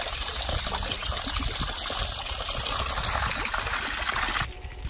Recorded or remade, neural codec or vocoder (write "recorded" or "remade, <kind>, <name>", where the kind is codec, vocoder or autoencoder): recorded